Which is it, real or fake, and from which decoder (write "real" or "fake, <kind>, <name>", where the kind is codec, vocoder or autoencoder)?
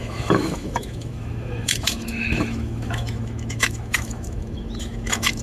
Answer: fake, autoencoder, DAC-VAE